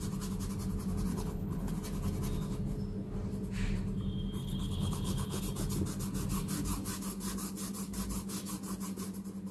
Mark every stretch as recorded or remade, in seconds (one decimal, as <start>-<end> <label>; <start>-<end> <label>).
0.0-1.1 recorded; 1.1-1.7 remade; 1.7-4.4 recorded; 4.4-5.4 remade; 5.4-9.5 recorded